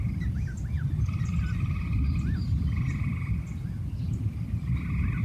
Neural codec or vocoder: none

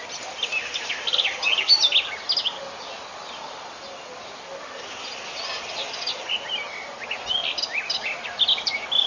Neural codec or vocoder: none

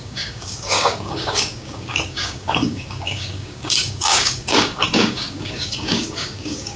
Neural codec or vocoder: codec, DAC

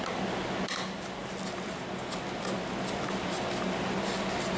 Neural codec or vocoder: none